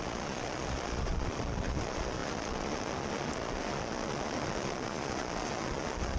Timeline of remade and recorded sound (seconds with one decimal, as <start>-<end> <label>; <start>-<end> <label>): 0.0-6.2 remade